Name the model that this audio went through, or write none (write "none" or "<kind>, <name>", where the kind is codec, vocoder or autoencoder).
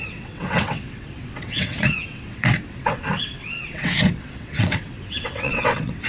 vocoder, WaveNeXt